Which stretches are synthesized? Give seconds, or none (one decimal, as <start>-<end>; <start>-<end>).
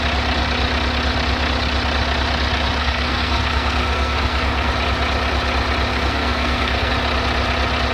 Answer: 2.8-4.7; 5.9-6.9